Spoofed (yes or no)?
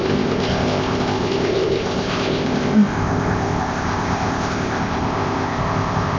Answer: yes